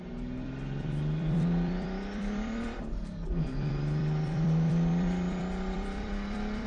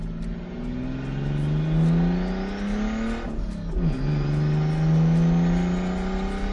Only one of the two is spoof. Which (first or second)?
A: first